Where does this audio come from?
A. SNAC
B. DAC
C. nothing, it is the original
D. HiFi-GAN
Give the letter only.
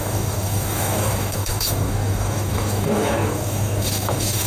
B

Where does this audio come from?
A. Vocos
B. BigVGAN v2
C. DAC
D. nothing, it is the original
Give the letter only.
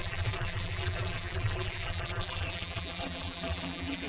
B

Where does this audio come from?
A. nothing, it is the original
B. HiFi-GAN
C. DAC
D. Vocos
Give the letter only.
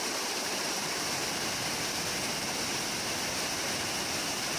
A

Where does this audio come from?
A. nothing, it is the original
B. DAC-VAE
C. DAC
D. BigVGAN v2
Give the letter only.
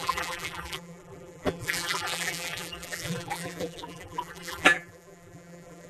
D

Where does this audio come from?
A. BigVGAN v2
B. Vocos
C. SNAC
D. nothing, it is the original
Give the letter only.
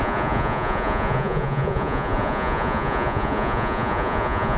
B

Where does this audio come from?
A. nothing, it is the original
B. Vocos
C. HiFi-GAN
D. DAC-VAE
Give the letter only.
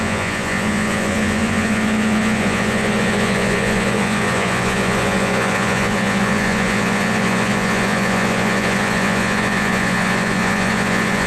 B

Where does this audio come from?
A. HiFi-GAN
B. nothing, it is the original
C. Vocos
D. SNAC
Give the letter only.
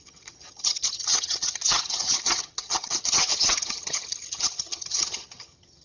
A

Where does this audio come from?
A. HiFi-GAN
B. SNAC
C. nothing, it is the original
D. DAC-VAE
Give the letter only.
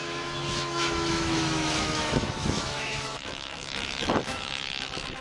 D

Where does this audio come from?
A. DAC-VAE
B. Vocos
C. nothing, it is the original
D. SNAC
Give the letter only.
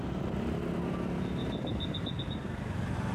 C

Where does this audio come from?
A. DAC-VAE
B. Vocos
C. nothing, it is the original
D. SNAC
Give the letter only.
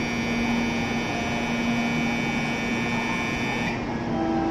C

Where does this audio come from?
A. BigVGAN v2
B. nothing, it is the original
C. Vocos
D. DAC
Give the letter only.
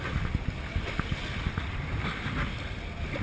B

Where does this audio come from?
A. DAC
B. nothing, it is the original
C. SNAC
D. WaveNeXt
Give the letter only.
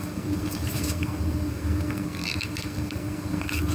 C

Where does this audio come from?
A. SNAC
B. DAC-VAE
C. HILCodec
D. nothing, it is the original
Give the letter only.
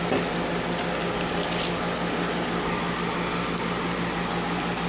D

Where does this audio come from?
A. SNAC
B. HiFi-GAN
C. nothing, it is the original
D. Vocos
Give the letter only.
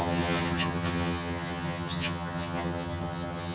B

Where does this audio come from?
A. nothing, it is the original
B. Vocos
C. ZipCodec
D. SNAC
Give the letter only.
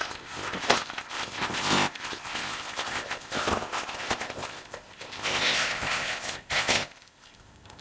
C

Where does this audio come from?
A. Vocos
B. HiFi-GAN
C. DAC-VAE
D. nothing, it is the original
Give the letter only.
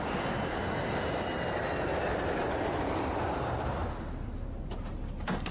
D